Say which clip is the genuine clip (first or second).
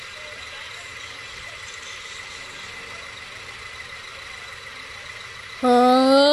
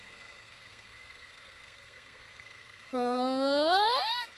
first